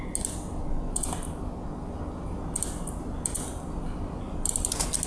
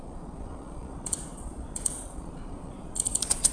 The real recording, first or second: first